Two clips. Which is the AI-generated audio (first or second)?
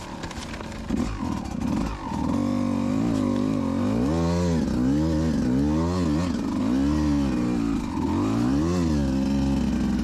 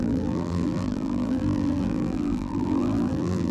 second